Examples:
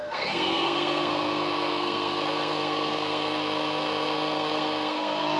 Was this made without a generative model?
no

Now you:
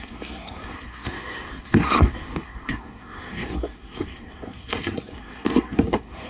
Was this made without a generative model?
no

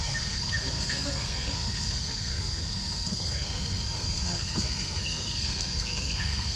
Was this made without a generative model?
no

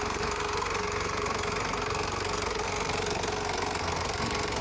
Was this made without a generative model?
no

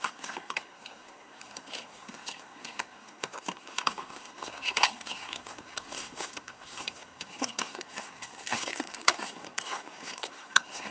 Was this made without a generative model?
no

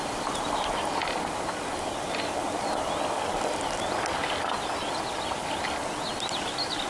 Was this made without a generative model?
yes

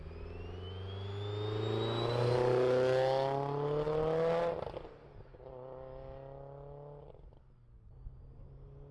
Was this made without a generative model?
yes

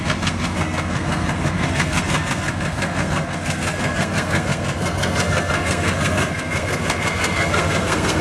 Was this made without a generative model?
no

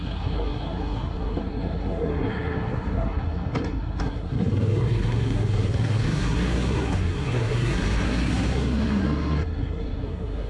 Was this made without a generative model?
no